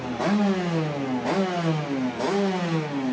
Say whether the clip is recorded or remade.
recorded